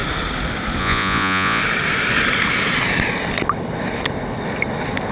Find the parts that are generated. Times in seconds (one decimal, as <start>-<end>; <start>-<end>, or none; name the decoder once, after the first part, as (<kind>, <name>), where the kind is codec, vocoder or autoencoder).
0.8-1.6 (vocoder, Vocos)